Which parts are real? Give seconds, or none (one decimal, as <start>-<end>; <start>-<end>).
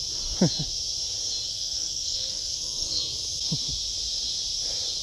0.0-1.5; 3.0-5.0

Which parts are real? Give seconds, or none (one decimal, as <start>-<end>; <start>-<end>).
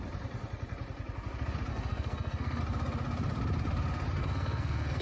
0.0-1.7; 2.6-4.2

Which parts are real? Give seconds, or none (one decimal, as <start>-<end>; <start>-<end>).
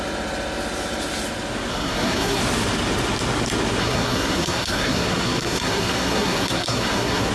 0.0-1.7; 2.4-3.8